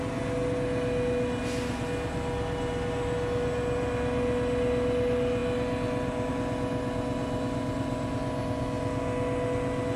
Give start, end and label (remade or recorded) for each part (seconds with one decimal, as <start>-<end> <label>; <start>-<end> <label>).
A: 0.0-10.0 recorded